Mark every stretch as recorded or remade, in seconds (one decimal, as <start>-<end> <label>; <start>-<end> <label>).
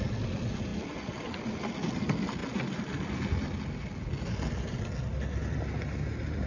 0.0-6.5 recorded